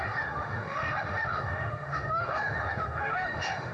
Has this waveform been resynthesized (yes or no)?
yes